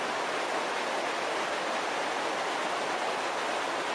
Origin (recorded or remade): recorded